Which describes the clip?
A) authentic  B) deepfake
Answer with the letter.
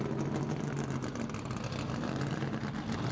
A